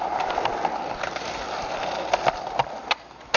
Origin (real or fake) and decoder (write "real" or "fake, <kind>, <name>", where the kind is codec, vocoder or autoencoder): fake, vocoder, BigVGAN v2